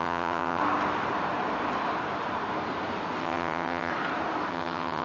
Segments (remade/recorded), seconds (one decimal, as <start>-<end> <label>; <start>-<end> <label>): 0.0-0.6 remade; 0.6-3.2 recorded; 3.2-3.9 remade; 3.9-4.5 recorded; 4.5-5.0 remade